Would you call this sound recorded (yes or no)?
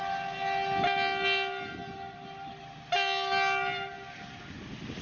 yes